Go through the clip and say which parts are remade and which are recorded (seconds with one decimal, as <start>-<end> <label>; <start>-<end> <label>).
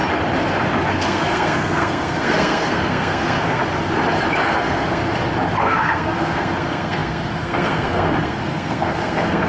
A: 0.0-0.9 recorded; 0.9-3.6 remade; 3.6-4.5 recorded; 4.5-5.0 remade; 5.0-5.6 recorded; 5.6-9.5 remade